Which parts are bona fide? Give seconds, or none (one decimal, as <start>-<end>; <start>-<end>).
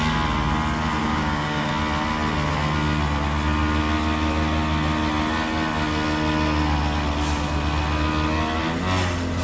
0.0-1.0; 1.7-9.4